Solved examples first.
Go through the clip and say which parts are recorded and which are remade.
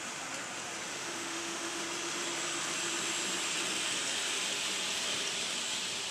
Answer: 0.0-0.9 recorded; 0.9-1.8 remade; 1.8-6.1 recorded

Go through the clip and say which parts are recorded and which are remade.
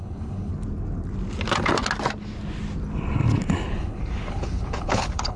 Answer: 0.0-0.5 remade; 0.5-3.7 recorded; 3.7-5.4 remade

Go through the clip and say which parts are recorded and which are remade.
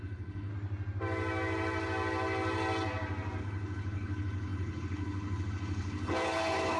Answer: 0.0-0.5 remade; 0.5-3.4 recorded; 3.4-6.8 remade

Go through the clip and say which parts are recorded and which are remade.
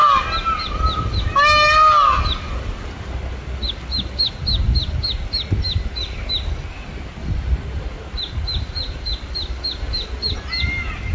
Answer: 0.0-11.1 recorded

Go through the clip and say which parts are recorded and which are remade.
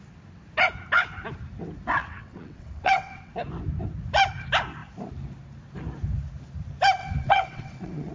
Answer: 0.0-2.0 recorded; 2.0-3.3 remade; 3.3-7.0 recorded; 7.0-8.1 remade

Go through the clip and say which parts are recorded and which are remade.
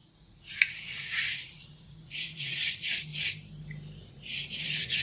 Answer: 0.0-3.1 remade; 3.1-4.1 recorded; 4.1-5.0 remade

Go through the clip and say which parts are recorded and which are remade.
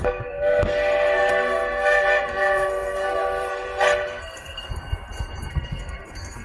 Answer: 0.0-4.7 remade; 4.7-5.5 recorded; 5.5-6.4 remade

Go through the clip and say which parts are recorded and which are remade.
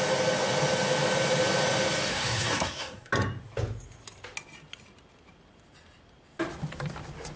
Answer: 0.0-2.1 recorded; 2.1-3.1 remade; 3.1-7.4 recorded